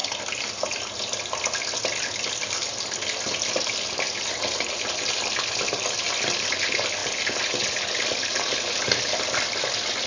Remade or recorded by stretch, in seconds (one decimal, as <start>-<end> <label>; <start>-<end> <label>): 0.0-0.7 remade; 0.7-2.4 recorded; 2.4-3.7 remade; 3.7-10.1 recorded